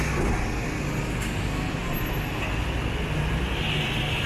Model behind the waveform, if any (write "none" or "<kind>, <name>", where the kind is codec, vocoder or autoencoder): none